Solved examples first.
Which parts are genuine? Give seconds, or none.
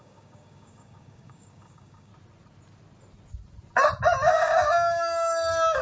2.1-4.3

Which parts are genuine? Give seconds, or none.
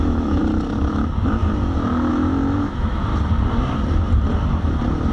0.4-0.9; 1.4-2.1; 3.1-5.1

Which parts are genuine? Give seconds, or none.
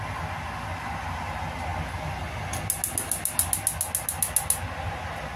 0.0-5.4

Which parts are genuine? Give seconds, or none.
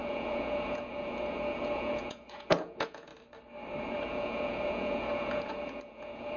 3.1-3.8